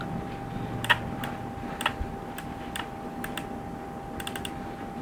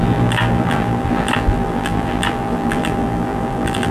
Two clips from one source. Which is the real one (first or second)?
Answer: first